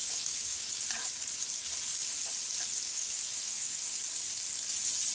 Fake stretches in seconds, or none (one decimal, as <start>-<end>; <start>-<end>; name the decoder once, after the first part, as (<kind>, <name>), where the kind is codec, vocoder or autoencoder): 0.0-0.8 (autoencoder, DAC-VAE); 2.9-4.0